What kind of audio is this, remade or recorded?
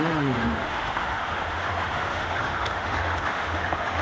remade